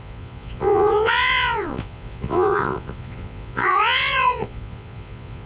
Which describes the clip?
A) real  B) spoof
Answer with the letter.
B